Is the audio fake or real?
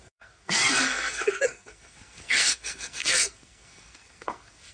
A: fake